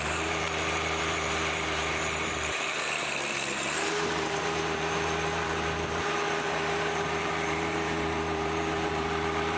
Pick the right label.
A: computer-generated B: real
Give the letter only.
A